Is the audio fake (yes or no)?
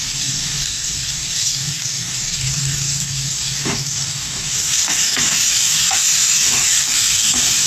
yes